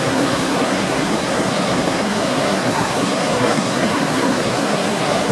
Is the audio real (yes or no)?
no